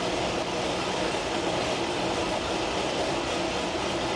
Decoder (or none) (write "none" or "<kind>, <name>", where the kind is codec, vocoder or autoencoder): vocoder, BigVGAN v2